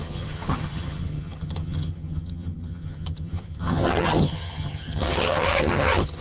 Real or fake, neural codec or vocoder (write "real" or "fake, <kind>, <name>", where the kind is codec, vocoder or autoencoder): fake, vocoder, HiFi-GAN